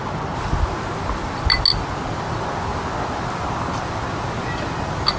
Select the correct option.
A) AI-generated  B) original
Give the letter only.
B